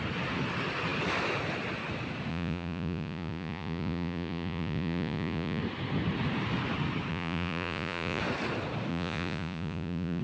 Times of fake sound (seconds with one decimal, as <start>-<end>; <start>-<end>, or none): 2.3-5.6; 7.1-8.2; 8.9-10.2